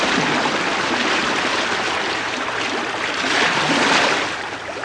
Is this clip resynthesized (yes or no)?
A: no